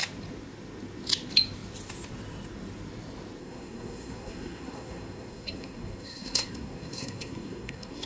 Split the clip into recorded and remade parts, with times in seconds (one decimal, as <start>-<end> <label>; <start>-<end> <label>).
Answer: 0.0-3.4 recorded; 3.4-8.1 remade